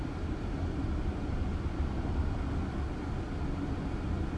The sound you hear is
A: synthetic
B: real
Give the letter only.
B